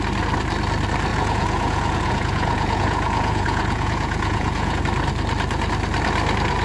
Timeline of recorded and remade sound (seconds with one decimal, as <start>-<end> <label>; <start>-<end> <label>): 0.0-1.1 recorded; 1.1-4.8 remade; 4.8-6.6 recorded